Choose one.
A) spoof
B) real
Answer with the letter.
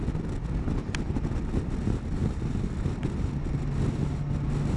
B